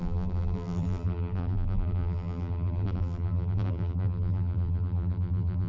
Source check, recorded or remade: remade